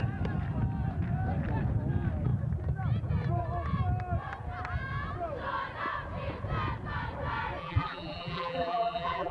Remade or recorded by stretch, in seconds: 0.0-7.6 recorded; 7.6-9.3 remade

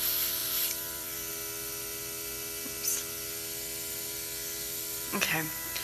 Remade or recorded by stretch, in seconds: 0.0-0.4 recorded; 0.4-1.3 remade; 1.3-5.8 recorded

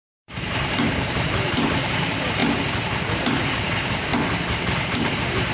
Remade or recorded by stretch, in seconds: 0.0-2.4 remade; 2.4-3.1 recorded; 3.1-4.1 remade; 4.1-4.9 recorded; 4.9-5.5 remade

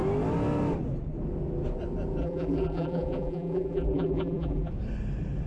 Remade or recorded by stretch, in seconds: 0.0-2.2 recorded; 2.2-4.7 remade; 4.7-5.5 recorded

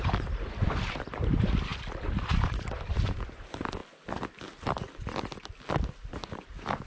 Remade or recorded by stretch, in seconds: 0.0-3.8 remade; 3.8-6.1 recorded; 6.1-6.9 remade

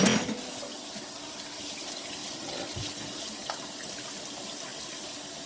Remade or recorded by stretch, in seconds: 0.0-5.5 recorded

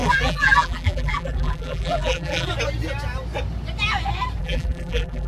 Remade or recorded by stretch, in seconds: 0.0-2.5 remade; 2.5-4.4 recorded; 4.4-5.3 remade